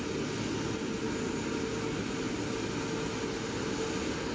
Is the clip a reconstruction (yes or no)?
no